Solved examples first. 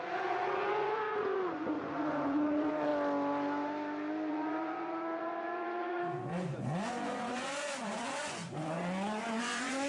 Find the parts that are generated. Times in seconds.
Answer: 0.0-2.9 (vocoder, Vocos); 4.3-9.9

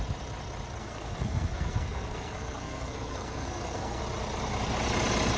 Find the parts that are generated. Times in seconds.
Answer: 0.8-4.0 (codec, SNAC)

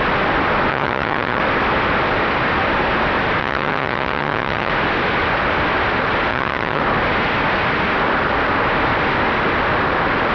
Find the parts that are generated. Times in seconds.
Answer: 0.7-1.4 (vocoder, HiFi-GAN); 3.4-4.7; 6.3-6.8

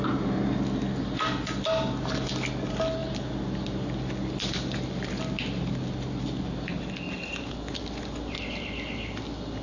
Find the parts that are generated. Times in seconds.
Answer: none

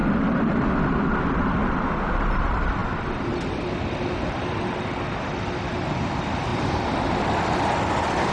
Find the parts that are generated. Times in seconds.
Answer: 0.0-1.2 (vocoder, BigVGAN v2); 2.8-3.5

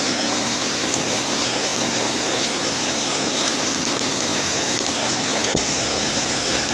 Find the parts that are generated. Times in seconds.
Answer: 0.0-6.7 (codec, SNAC)

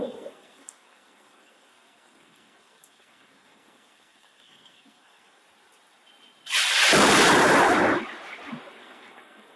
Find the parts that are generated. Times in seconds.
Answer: 0.0-5.4 (codec, SNAC); 8.8-9.6